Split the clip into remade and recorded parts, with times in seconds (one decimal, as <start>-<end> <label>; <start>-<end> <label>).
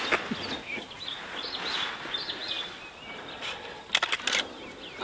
0.0-5.0 recorded